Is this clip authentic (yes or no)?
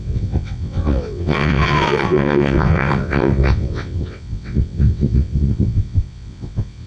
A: no